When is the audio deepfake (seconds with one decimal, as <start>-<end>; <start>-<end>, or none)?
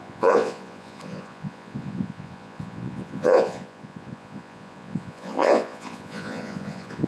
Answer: 0.0-7.1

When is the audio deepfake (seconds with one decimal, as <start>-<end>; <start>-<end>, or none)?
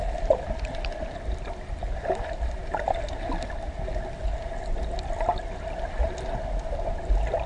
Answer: none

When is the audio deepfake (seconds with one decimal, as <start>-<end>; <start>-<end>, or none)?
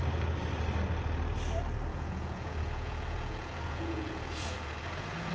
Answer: 1.9-5.3